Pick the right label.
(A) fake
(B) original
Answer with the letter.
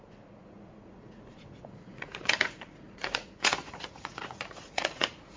A